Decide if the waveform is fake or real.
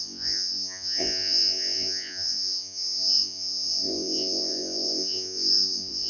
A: fake